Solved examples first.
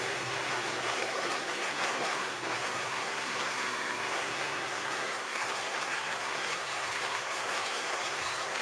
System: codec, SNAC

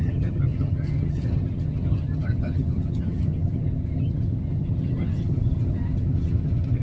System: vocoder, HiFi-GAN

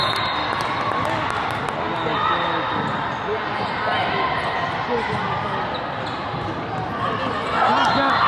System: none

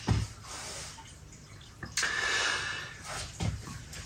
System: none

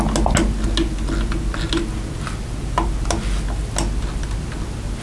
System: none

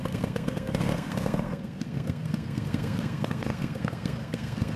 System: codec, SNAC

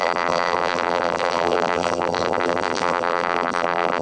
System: vocoder, BigVGAN v2